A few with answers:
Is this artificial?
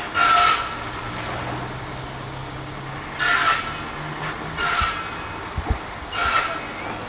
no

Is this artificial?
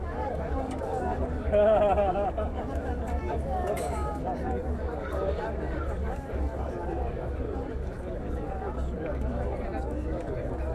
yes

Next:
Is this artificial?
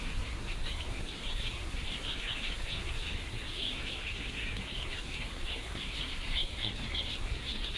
yes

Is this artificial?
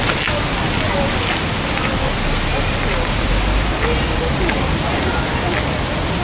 no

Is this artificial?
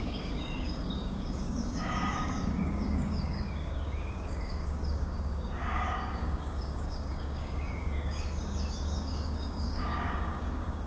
yes